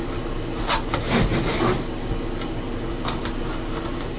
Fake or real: real